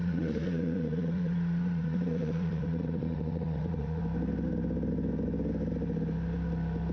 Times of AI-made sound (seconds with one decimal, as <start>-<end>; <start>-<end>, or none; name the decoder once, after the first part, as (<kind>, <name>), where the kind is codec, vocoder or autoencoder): 0.0-4.0 (vocoder, Vocos)